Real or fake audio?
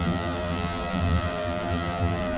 fake